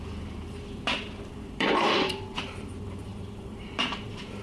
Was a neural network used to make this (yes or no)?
yes